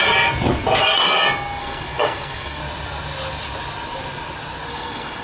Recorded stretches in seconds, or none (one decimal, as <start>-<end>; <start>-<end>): 0.0-1.6; 2.6-4.7